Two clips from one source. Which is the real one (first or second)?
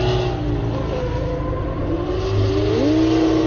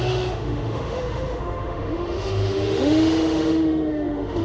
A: first